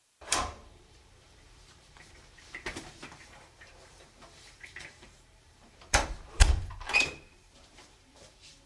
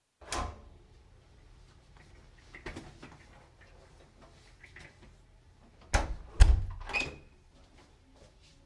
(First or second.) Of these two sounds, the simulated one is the first